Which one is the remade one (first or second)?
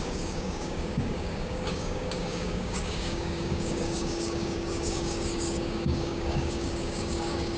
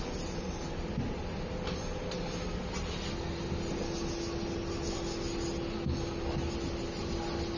first